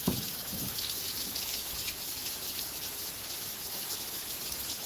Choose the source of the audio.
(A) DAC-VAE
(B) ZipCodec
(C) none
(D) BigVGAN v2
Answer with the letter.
A